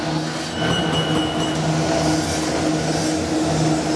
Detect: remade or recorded recorded